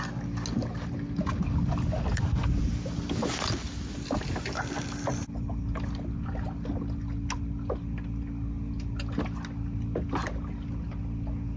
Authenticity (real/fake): real